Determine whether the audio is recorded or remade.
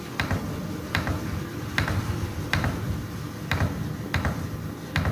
remade